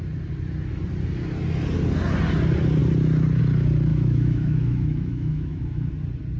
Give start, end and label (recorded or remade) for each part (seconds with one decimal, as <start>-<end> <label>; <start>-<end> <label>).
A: 0.0-3.9 recorded; 3.9-5.9 remade; 5.9-6.4 recorded

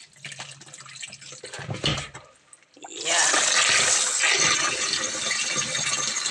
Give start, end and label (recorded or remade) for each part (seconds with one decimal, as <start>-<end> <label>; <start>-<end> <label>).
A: 0.0-6.3 recorded

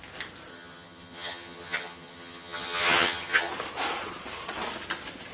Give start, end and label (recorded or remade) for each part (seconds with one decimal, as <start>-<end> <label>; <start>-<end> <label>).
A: 0.0-0.5 recorded; 0.5-3.5 remade; 3.5-5.3 recorded

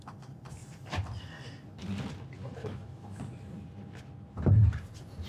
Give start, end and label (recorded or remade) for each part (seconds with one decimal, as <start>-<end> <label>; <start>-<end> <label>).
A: 0.0-2.6 recorded; 2.6-3.2 remade; 3.2-5.3 recorded

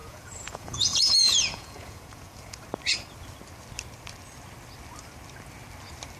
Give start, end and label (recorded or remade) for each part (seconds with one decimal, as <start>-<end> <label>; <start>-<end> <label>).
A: 0.0-2.6 remade; 2.6-6.2 recorded

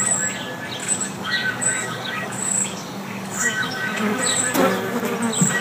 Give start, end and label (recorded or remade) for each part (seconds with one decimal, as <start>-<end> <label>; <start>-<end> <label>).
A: 0.0-0.8 recorded; 0.8-4.2 remade; 4.2-5.6 recorded

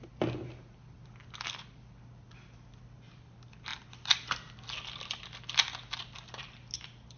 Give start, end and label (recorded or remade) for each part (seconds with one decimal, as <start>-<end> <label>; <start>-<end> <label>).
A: 0.0-7.2 recorded